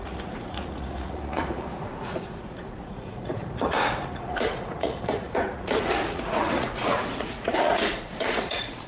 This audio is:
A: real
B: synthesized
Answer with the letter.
B